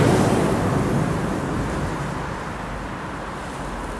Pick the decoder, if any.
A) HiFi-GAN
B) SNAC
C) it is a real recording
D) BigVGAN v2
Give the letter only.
C